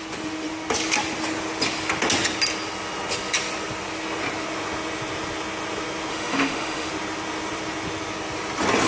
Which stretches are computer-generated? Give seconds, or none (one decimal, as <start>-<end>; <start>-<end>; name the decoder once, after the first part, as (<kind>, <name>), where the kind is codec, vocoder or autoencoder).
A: 6.1-6.9 (autoencoder, DAC-VAE)